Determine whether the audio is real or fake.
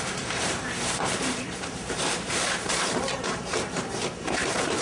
fake